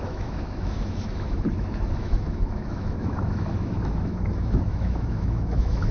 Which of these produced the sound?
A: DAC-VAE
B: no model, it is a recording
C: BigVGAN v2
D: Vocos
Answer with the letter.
A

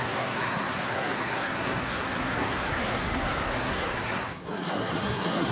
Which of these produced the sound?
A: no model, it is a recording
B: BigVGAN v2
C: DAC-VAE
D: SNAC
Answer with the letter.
D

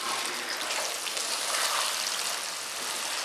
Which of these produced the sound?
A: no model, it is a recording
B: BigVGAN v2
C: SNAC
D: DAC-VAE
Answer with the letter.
A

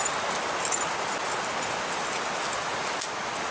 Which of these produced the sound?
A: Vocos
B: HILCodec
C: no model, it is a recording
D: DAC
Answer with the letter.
C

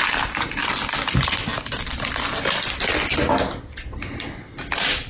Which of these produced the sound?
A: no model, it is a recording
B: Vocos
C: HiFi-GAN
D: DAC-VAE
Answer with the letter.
A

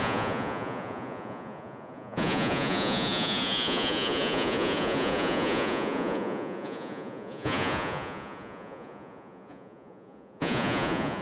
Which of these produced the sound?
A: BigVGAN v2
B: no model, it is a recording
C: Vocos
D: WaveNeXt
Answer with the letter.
C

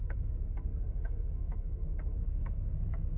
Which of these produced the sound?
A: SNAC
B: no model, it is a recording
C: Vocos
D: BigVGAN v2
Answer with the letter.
A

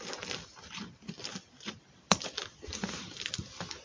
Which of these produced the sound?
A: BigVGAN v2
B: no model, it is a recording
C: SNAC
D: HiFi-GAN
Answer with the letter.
A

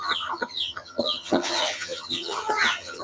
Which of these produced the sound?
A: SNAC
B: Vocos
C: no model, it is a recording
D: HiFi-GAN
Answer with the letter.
D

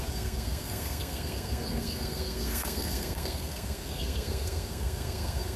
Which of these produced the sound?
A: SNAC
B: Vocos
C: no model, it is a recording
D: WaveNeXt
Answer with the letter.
A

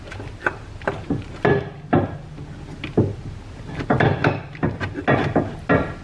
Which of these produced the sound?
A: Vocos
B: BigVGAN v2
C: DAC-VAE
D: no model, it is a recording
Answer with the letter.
D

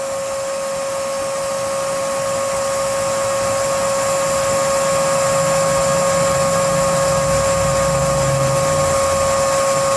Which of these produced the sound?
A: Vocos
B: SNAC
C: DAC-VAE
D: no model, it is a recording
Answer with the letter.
D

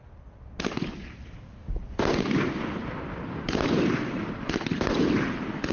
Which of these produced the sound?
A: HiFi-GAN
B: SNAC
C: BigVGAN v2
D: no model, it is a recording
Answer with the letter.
D